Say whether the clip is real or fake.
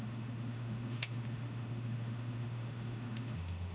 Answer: fake